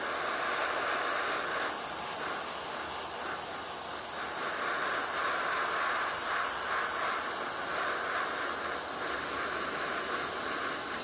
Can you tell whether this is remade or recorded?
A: recorded